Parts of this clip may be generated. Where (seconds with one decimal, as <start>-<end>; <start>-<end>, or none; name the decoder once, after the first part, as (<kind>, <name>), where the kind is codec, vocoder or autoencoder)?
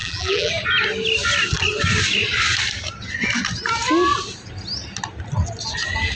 0.0-0.5 (vocoder, BigVGAN v2)